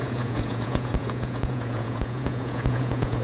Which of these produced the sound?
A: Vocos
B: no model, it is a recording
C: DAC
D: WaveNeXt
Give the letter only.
A